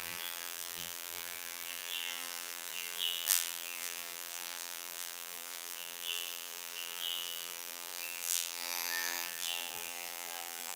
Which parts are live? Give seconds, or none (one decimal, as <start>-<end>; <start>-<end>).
none